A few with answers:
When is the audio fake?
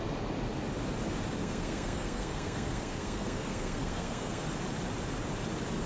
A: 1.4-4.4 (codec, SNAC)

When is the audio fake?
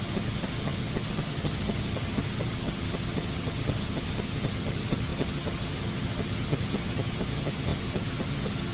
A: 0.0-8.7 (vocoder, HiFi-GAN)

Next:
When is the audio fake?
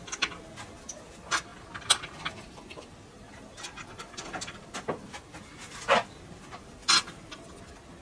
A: none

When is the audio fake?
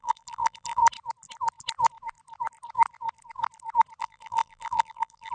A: 0.0-0.8 (vocoder, BigVGAN v2); 4.0-5.3